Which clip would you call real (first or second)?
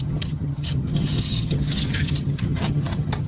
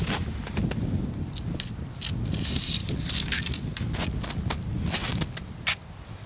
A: second